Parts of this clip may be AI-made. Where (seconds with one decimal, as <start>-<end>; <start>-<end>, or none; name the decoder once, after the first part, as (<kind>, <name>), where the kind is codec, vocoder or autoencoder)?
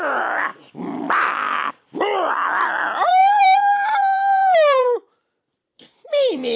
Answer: 0.0-0.5 (vocoder, BigVGAN v2); 1.7-6.6